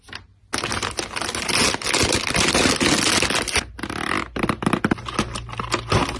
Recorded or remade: recorded